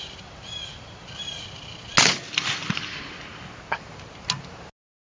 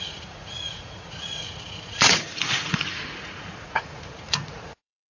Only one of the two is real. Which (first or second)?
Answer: first